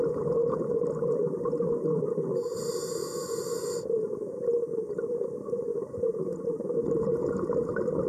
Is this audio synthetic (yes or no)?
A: no